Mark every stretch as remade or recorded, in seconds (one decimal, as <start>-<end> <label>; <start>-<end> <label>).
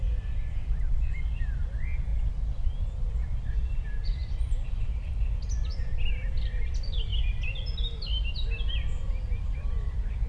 0.0-10.3 recorded